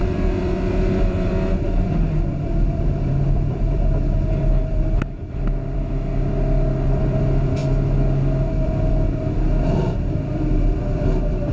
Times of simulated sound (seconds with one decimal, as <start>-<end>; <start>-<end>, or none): 0.0-7.6; 8.5-11.5